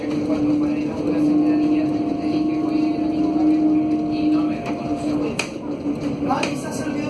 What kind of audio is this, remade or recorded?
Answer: recorded